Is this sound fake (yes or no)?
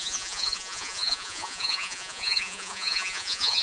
yes